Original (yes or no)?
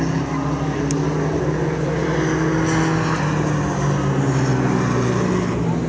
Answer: yes